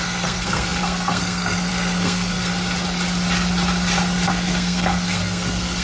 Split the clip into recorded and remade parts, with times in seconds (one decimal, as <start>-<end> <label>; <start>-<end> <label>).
0.0-2.5 remade; 2.5-4.3 recorded; 4.3-5.8 remade